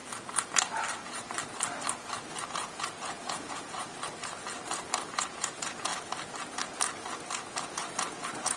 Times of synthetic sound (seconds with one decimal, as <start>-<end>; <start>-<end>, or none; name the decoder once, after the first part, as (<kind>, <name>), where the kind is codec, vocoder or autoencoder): 2.5-3.9 (vocoder, Vocos); 5.1-5.9; 7.7-8.6